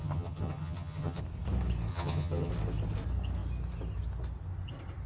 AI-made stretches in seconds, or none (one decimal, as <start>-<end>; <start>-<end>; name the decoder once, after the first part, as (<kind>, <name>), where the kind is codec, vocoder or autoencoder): 0.0-1.2 (vocoder, HiFi-GAN); 1.9-2.5